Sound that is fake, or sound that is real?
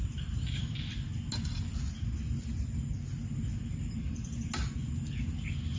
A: real